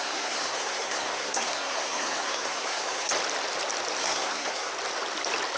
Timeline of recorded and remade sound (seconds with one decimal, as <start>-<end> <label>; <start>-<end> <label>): 0.0-3.1 remade; 3.1-4.0 recorded; 4.0-4.7 remade; 4.7-5.6 recorded